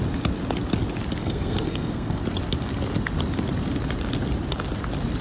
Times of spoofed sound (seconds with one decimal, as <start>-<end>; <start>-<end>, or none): 1.2-2.2